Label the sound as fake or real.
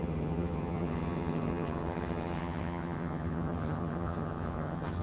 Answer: fake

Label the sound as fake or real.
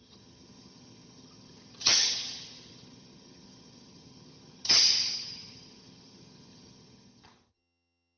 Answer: fake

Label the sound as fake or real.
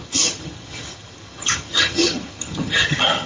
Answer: fake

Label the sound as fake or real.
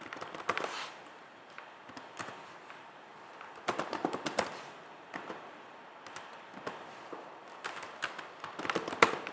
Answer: real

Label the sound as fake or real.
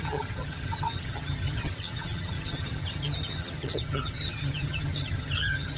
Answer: fake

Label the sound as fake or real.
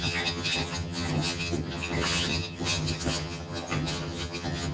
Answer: fake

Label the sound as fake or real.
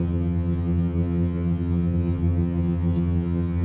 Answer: fake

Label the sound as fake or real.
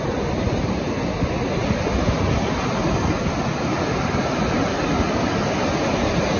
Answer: real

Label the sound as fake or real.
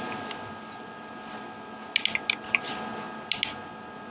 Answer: real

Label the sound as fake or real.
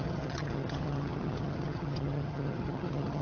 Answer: fake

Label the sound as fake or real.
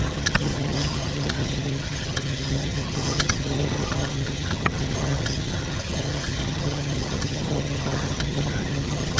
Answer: fake